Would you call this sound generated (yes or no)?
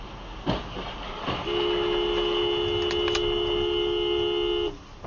no